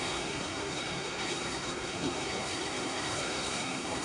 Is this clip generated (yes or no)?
yes